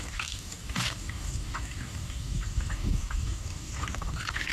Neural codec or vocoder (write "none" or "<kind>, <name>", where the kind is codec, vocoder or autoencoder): codec, DAC